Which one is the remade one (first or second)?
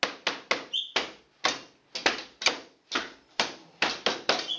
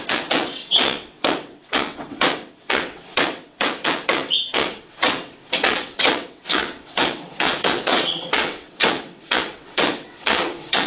second